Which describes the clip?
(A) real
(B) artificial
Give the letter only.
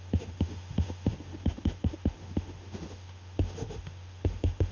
B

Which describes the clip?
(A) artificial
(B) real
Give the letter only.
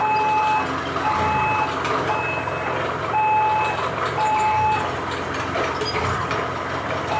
B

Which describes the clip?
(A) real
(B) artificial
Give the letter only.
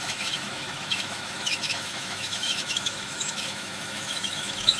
B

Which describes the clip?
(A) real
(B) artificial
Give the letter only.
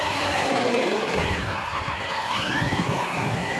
B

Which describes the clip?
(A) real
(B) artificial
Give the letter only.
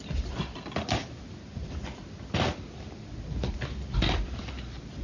A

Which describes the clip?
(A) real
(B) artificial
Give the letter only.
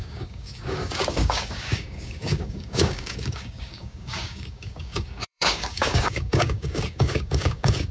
B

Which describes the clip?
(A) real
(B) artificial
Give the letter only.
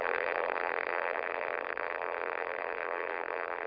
B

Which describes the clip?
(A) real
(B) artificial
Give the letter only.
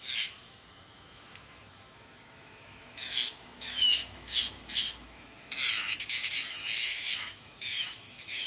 B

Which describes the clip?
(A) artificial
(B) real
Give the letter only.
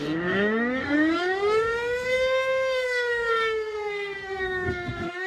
A